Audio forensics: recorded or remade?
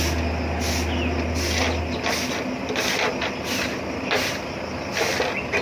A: recorded